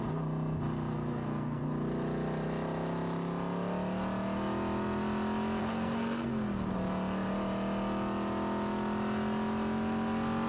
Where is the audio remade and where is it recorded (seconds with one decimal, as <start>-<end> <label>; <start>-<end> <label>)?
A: 0.0-0.9 recorded; 0.9-1.6 remade; 1.6-5.6 recorded; 5.6-6.3 remade; 6.3-10.5 recorded